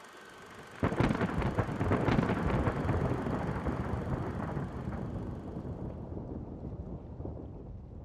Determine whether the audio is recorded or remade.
recorded